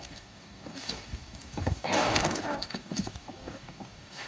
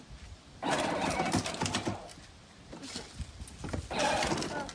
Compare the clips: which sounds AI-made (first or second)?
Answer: first